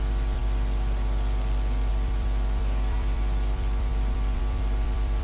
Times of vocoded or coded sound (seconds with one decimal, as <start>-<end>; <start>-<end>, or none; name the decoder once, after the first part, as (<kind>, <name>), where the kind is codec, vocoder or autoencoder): 0.0-0.4 (vocoder, BigVGAN v2); 1.9-5.2